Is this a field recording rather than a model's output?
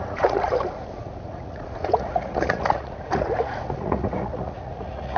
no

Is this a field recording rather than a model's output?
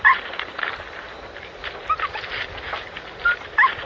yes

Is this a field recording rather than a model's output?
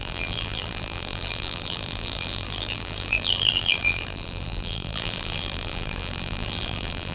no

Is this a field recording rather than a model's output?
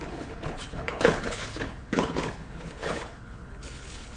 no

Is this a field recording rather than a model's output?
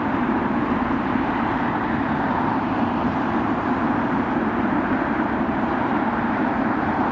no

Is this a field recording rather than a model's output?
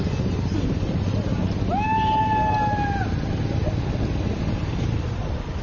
yes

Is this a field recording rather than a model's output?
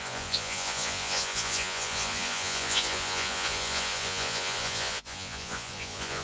no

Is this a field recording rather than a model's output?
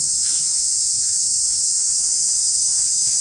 no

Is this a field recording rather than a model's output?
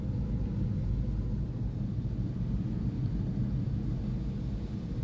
yes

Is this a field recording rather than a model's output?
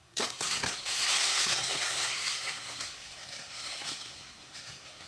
no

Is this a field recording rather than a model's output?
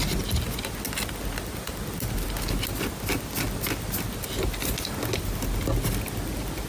yes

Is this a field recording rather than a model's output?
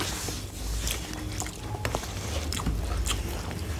yes